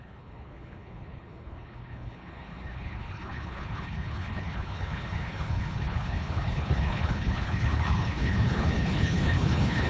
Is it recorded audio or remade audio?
remade